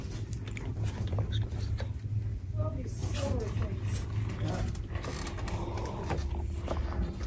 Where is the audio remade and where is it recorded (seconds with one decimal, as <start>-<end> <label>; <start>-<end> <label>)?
0.0-7.3 recorded